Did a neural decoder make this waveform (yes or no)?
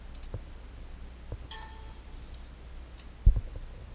no